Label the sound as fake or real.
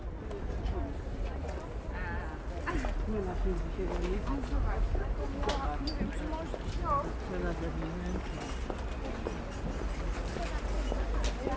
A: real